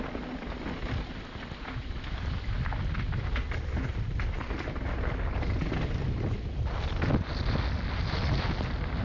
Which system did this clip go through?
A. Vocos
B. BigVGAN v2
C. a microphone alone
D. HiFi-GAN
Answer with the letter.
C